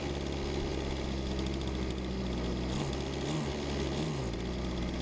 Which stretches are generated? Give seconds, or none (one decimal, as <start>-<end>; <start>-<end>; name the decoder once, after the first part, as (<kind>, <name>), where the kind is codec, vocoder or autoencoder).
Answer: none